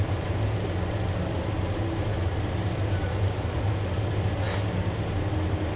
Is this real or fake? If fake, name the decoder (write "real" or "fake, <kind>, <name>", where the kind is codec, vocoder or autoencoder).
real